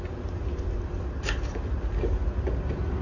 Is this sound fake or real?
real